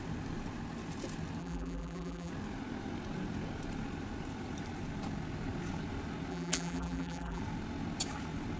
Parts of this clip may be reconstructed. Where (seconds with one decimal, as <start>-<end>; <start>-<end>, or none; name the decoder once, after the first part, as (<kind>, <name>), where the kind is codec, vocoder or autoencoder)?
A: 1.4-2.3 (vocoder, BigVGAN v2); 6.3-7.4